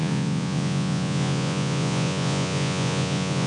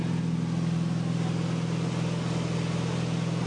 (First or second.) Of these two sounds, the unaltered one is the second